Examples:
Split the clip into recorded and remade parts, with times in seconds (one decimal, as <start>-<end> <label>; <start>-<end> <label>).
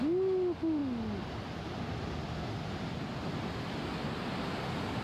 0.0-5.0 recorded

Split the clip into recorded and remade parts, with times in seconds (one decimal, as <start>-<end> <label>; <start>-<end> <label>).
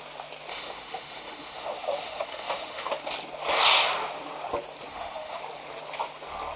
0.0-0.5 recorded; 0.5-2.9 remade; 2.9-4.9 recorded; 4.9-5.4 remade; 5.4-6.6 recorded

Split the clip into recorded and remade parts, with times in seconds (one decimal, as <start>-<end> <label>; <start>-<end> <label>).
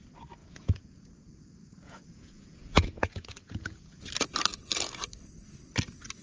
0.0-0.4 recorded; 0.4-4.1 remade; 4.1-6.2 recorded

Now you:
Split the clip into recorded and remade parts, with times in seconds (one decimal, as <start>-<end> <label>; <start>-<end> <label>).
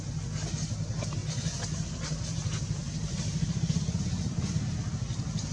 0.0-5.5 recorded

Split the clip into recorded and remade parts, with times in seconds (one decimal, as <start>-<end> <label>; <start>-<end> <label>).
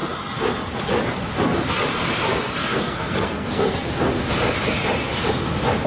0.0-2.6 recorded; 2.6-3.9 remade; 3.9-5.9 recorded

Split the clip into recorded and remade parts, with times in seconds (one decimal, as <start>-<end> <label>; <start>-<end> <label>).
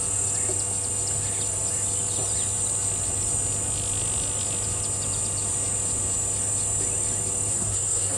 0.0-7.5 recorded; 7.5-8.2 remade